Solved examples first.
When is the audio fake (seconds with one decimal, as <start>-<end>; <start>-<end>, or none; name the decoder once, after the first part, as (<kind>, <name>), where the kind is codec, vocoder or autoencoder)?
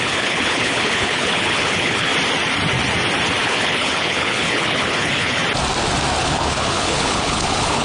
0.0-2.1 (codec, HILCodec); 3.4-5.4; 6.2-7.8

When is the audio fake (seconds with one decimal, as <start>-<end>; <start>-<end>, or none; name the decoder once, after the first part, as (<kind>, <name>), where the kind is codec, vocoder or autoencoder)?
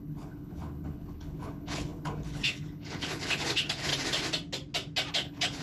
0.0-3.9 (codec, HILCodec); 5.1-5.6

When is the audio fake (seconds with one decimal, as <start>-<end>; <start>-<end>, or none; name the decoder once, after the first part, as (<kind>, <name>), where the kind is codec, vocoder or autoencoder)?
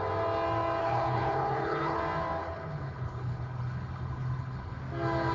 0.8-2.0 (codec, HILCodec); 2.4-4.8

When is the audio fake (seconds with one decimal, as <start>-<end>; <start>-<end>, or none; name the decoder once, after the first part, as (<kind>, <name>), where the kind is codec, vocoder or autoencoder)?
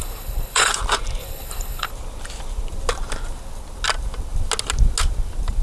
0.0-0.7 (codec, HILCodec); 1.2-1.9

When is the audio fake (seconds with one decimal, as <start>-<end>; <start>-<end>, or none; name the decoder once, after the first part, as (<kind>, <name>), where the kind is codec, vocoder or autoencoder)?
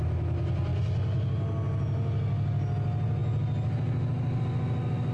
none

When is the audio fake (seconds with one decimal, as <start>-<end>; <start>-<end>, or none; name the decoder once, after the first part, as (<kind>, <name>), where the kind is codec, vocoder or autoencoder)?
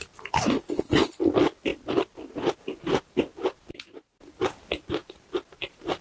0.7-1.2 (codec, HILCodec)